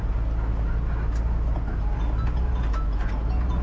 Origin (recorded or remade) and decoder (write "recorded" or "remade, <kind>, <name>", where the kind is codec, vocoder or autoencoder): recorded